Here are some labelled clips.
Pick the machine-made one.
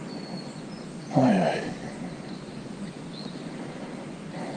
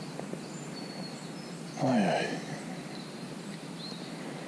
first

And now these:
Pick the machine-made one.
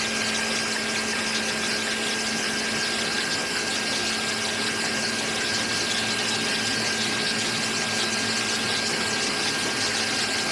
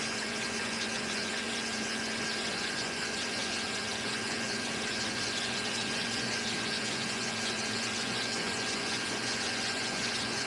second